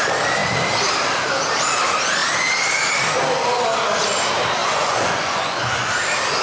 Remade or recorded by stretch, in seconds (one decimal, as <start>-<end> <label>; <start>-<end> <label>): 0.0-4.6 recorded; 4.6-5.9 remade; 5.9-6.4 recorded